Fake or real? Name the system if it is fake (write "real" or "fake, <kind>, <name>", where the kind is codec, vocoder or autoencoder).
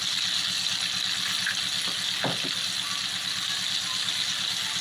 real